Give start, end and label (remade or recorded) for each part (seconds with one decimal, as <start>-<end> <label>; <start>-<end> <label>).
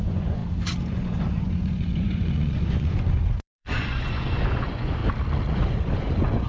0.0-0.4 remade; 0.4-0.9 recorded; 0.9-5.0 remade; 5.0-5.5 recorded; 5.5-6.5 remade